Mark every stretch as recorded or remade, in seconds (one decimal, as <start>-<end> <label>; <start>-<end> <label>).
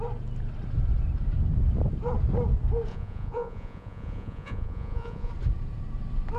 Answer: 0.0-2.9 recorded; 2.9-5.3 remade; 5.3-6.4 recorded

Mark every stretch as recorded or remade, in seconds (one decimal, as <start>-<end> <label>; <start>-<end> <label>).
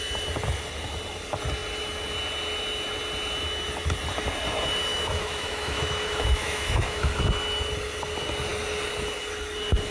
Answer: 0.0-4.9 recorded; 4.9-7.1 remade; 7.1-9.9 recorded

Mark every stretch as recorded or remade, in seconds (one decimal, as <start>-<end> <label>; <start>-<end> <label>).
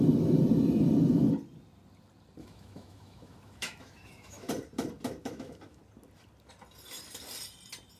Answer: 0.0-2.4 recorded; 2.4-4.5 remade; 4.5-5.2 recorded; 5.2-5.8 remade; 5.8-8.0 recorded